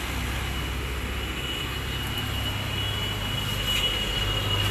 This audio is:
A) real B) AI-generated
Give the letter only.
A